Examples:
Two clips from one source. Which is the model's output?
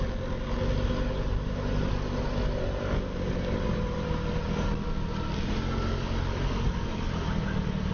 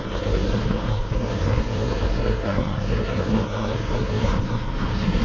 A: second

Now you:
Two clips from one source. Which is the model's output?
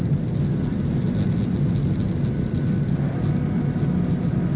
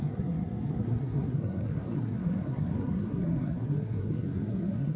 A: second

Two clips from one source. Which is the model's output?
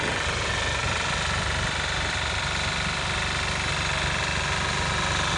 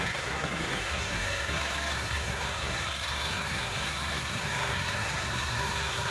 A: second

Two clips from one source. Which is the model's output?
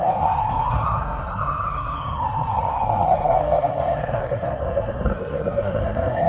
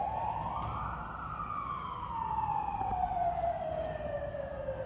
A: first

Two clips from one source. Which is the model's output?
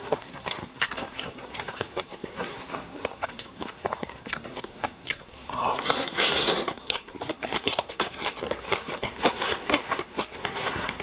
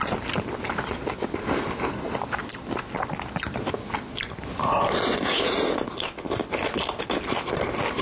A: first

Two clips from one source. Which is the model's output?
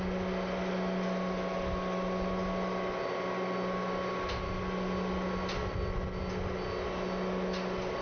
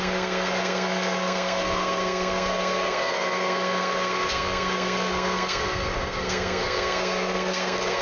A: second